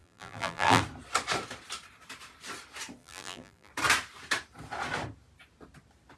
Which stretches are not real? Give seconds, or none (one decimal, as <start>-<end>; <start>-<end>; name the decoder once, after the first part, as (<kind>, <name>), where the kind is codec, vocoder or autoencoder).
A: 0.0-0.8 (vocoder, BigVGAN v2); 3.0-3.7